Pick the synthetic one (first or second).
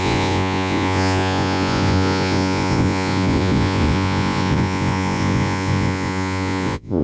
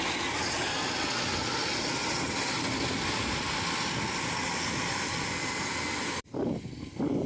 first